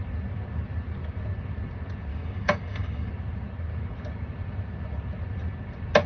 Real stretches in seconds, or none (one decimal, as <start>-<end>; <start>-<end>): 0.0-2.1; 3.1-6.1